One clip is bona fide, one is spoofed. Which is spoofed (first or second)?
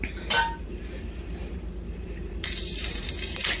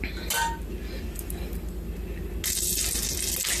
first